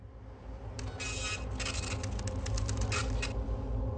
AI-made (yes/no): no